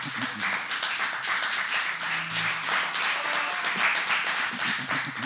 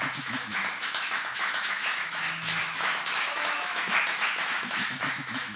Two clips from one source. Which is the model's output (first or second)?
second